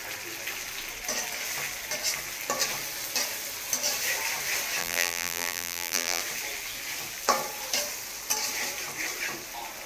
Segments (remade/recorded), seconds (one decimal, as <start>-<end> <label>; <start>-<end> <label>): 0.0-4.8 recorded; 4.8-6.2 remade; 6.2-9.9 recorded